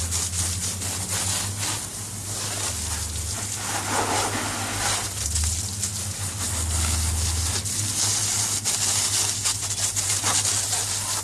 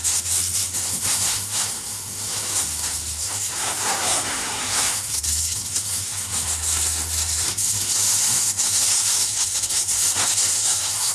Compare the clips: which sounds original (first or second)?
first